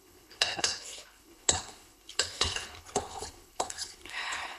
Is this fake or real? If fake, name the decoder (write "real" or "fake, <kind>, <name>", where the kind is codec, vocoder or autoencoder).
fake, codec, HILCodec